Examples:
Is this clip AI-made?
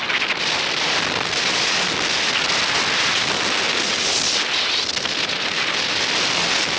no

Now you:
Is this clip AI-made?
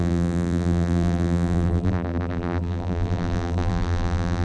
yes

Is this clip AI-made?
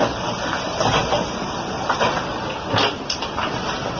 no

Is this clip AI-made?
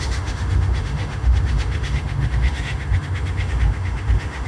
yes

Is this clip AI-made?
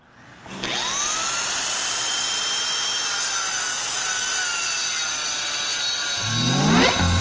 no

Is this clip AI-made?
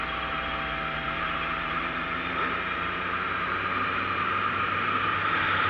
yes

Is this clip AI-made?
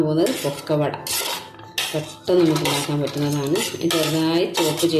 no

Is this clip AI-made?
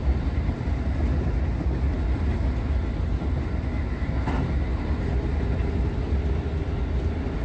no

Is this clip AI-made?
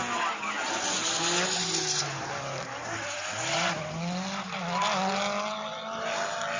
no